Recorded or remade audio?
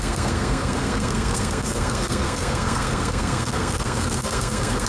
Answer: remade